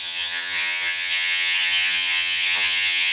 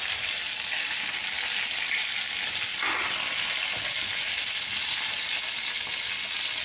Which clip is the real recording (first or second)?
second